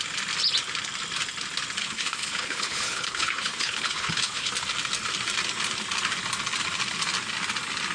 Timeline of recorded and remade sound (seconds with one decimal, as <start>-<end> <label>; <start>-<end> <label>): 0.0-1.8 recorded; 1.8-4.5 remade; 4.5-7.9 recorded